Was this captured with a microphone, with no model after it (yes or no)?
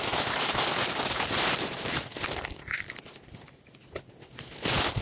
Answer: yes